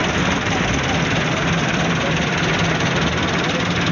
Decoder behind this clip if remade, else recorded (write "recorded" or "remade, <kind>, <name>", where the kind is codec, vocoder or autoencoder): recorded